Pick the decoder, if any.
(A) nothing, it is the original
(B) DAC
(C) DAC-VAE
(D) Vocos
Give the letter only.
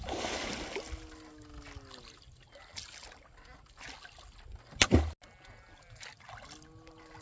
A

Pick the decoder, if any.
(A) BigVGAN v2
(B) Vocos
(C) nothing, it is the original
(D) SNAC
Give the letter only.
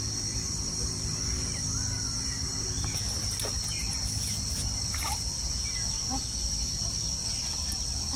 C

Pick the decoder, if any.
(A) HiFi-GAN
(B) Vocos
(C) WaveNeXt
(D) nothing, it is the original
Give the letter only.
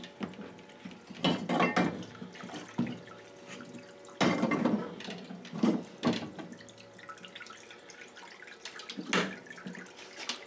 D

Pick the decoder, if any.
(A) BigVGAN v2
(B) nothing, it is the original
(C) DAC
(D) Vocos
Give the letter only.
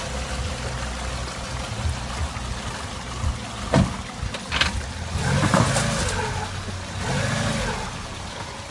B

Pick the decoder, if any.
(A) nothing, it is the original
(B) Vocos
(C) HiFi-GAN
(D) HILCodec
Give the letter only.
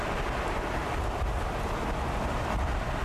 A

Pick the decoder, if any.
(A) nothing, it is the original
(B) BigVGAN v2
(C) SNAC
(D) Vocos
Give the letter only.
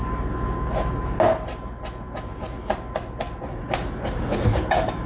A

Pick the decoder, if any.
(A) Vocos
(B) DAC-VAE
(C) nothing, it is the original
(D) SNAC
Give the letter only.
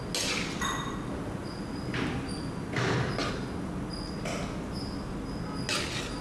C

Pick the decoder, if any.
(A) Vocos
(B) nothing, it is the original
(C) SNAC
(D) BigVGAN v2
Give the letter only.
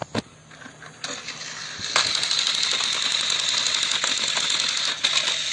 B